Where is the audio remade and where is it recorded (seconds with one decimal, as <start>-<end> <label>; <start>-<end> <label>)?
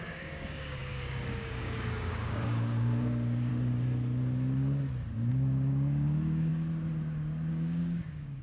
0.0-3.5 remade; 3.5-5.3 recorded; 5.3-6.5 remade; 6.5-7.5 recorded; 7.5-8.4 remade